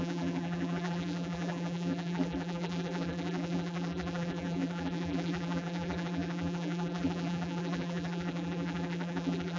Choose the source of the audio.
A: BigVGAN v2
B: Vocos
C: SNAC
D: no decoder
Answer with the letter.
A